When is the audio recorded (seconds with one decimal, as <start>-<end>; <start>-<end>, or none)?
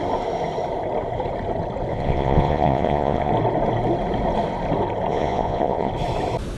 0.0-1.9; 3.3-5.1; 5.9-6.6